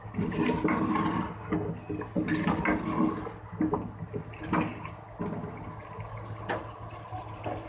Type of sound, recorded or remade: recorded